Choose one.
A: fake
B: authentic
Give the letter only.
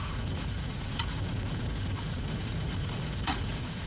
A